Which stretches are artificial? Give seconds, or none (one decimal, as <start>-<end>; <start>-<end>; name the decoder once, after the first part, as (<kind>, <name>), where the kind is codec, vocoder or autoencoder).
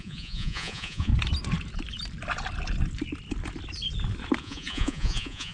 0.0-1.1 (vocoder, Vocos); 4.4-5.5